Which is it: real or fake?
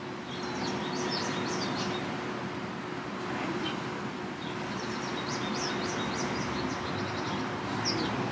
real